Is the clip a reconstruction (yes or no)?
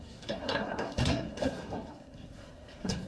yes